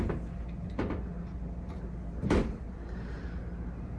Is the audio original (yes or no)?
yes